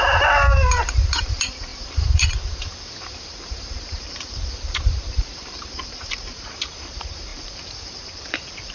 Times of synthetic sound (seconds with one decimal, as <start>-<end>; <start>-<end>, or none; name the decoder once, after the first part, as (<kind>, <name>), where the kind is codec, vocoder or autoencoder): 0.0-8.7 (vocoder, BigVGAN v2)